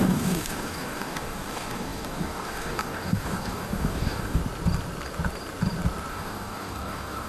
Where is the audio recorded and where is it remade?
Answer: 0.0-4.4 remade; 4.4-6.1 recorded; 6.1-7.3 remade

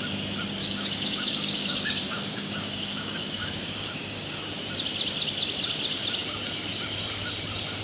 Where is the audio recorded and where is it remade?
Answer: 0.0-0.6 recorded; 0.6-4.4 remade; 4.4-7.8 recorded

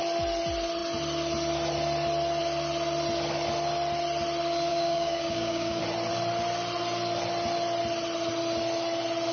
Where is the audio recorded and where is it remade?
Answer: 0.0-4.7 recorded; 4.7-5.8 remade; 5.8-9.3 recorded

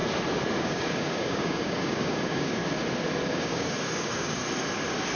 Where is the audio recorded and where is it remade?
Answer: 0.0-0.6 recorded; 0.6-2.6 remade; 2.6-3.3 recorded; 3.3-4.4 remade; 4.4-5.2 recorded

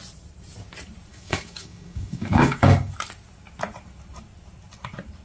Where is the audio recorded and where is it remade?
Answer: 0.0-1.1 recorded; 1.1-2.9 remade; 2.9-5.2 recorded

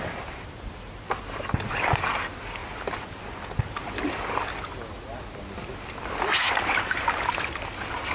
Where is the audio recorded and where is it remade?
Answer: 0.0-8.1 recorded

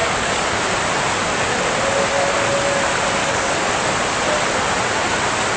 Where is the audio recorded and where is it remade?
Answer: 0.0-0.6 remade; 0.6-3.2 recorded; 3.2-3.7 remade; 3.7-5.6 recorded